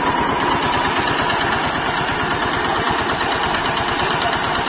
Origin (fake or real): fake